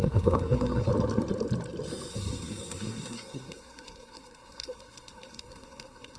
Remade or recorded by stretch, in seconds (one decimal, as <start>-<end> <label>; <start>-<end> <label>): 0.0-0.9 remade; 0.9-2.1 recorded; 2.1-6.2 remade

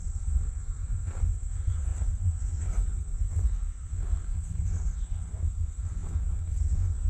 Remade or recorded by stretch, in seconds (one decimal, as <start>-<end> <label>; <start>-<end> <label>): 0.0-7.1 remade

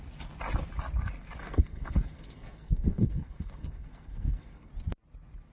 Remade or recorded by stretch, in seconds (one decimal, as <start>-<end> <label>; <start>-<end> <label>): 0.0-1.4 recorded; 1.4-4.7 remade; 4.7-5.5 recorded

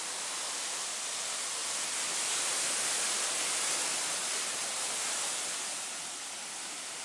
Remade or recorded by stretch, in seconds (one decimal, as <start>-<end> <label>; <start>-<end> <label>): 0.0-7.0 recorded

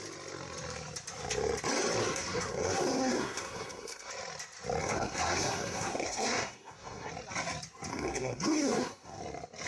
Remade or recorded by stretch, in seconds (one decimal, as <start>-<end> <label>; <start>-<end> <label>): 0.0-2.0 recorded; 2.0-4.1 remade; 4.1-4.8 recorded; 4.8-7.1 remade; 7.1-7.9 recorded; 7.9-9.2 remade; 9.2-9.7 recorded